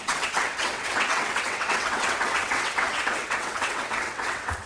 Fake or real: fake